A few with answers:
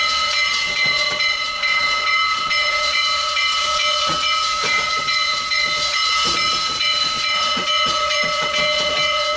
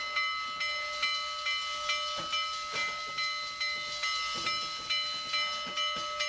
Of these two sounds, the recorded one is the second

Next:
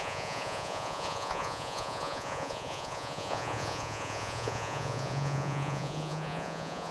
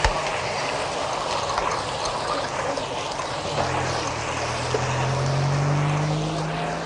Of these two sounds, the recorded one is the second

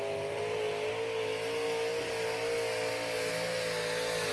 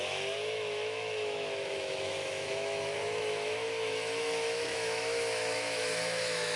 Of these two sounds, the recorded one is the first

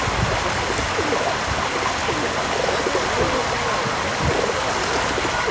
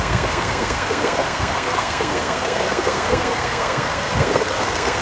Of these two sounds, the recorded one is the first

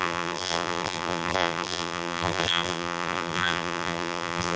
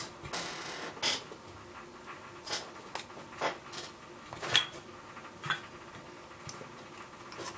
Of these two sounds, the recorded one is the second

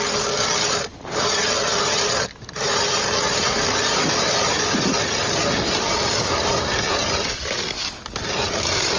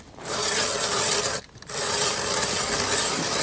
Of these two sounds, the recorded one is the first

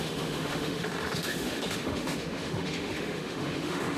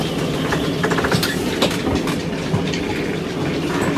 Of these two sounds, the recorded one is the second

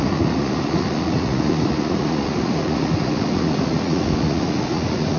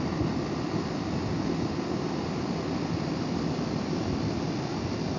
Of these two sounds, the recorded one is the second